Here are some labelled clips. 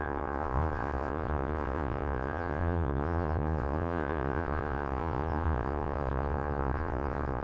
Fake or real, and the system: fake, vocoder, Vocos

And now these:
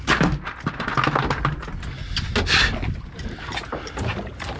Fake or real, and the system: real